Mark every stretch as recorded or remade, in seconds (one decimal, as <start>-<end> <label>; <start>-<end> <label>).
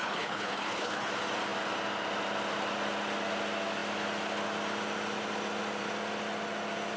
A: 0.0-1.1 remade; 1.1-7.0 recorded